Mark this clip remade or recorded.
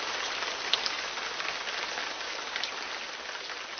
recorded